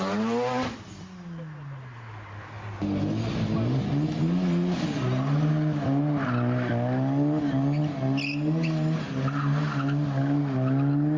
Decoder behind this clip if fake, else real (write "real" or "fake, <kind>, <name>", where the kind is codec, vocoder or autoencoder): real